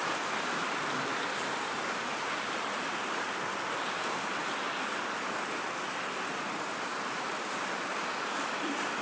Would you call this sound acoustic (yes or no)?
yes